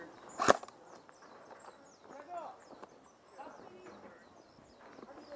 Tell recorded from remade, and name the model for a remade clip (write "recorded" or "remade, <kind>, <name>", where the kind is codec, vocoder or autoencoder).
recorded